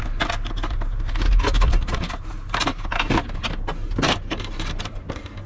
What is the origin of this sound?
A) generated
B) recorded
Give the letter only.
B